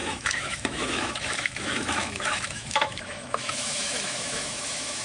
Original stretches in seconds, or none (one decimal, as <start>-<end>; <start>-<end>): none